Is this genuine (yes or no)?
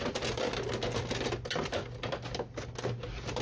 yes